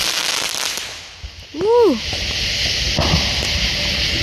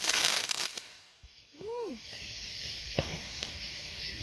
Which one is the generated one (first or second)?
second